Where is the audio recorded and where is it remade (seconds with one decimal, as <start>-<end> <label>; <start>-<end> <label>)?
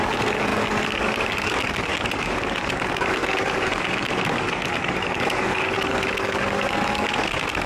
0.0-7.7 remade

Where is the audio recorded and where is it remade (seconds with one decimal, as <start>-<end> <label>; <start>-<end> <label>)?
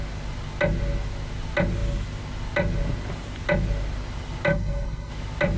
0.0-4.5 recorded; 4.5-5.1 remade; 5.1-5.6 recorded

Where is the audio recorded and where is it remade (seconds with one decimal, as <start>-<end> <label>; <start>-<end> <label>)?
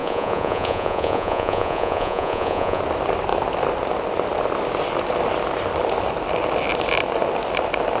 0.0-2.8 remade; 2.8-8.0 recorded